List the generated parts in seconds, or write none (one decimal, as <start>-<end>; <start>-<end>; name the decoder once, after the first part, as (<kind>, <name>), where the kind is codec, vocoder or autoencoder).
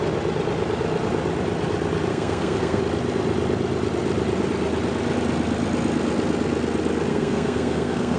2.1-2.8 (codec, SNAC); 7.1-8.2